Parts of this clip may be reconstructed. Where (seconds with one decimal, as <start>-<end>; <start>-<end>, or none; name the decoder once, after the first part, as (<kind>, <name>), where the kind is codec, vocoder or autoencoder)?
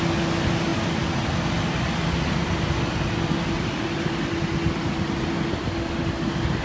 none